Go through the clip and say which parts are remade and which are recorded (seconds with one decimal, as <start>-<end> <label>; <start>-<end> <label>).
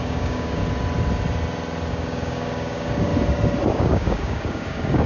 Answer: 0.0-0.6 remade; 0.6-1.9 recorded; 1.9-3.1 remade; 3.1-3.7 recorded; 3.7-5.1 remade